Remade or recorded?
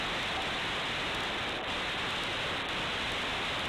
recorded